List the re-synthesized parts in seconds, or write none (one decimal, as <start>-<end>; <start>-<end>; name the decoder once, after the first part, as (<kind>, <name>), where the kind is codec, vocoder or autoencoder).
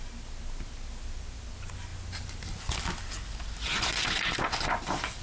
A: none